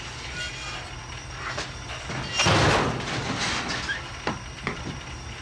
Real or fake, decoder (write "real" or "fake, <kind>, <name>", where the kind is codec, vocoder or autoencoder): real